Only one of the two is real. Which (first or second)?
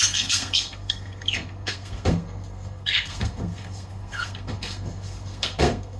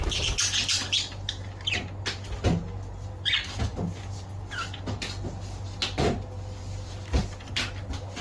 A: second